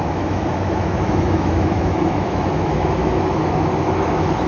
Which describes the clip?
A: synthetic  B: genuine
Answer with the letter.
A